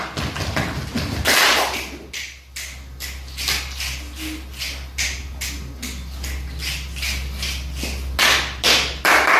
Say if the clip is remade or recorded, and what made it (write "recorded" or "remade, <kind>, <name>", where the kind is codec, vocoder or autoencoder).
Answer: recorded